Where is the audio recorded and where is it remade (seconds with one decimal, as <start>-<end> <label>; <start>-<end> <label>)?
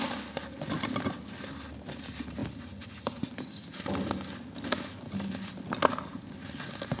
0.0-7.0 recorded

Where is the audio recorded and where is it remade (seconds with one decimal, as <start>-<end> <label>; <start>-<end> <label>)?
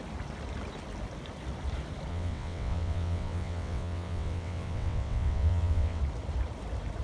0.0-2.1 recorded; 2.1-6.0 remade; 6.0-7.0 recorded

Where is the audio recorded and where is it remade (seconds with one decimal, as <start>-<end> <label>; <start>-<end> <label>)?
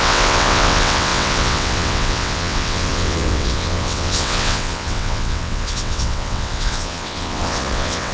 0.0-8.1 remade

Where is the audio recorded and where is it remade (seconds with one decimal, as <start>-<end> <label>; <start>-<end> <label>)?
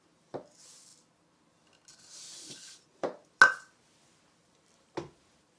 0.0-5.6 recorded